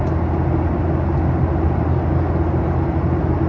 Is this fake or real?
real